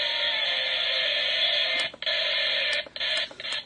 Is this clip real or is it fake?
real